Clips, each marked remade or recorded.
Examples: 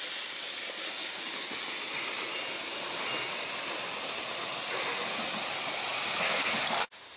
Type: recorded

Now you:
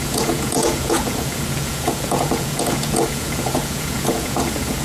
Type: remade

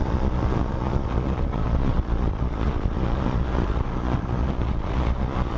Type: remade